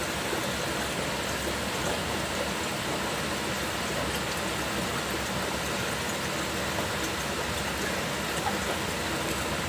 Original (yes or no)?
yes